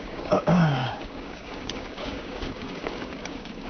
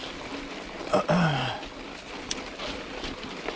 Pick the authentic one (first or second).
second